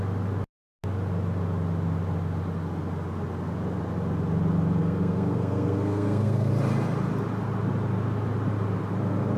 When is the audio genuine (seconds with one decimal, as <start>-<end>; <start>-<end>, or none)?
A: 0.0-4.8; 6.5-9.4